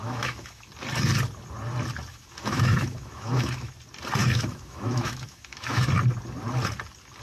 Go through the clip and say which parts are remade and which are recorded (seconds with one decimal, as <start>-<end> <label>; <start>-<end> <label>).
0.0-0.7 remade; 0.7-2.1 recorded; 2.1-3.7 remade; 3.7-4.2 recorded; 4.2-5.9 remade; 5.9-7.2 recorded